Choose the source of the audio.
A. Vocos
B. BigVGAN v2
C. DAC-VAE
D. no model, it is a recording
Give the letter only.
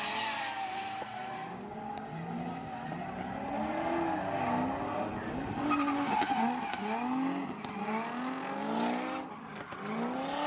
D